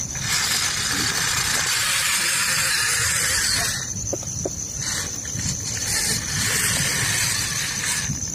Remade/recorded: recorded